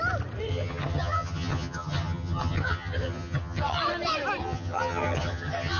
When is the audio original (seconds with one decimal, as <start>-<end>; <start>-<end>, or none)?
0.0-0.5; 3.8-4.4